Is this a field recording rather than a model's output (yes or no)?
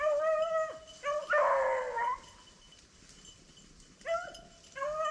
yes